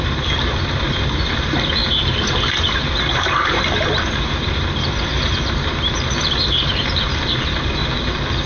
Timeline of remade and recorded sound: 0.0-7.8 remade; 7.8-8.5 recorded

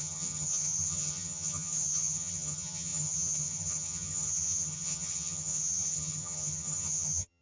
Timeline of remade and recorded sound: 0.0-7.4 remade